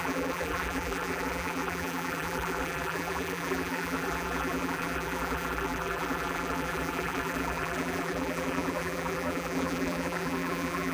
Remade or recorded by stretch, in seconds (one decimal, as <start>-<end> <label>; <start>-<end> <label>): 0.0-10.9 remade